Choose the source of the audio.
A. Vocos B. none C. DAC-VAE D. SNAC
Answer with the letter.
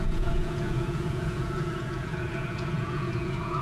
A